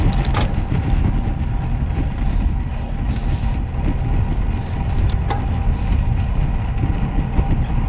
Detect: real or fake real